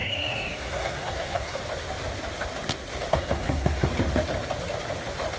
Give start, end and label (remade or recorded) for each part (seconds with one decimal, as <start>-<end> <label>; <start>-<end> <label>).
0.0-1.6 remade; 1.6-3.1 recorded; 3.1-3.9 remade; 3.9-5.4 recorded